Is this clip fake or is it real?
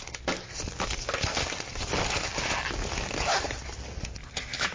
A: real